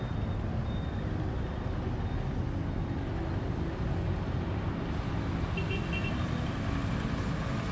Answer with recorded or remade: recorded